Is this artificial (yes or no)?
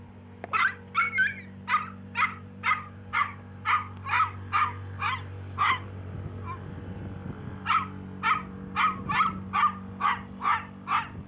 no